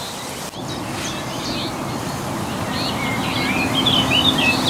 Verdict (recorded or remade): recorded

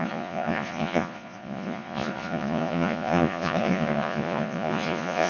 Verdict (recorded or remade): remade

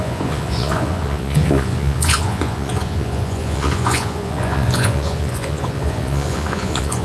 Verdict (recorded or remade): remade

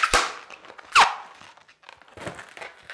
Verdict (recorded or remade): recorded